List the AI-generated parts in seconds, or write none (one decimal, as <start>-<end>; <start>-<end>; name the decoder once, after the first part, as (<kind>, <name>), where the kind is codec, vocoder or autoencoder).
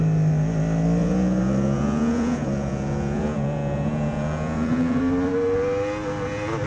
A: 1.0-5.0 (vocoder, Vocos)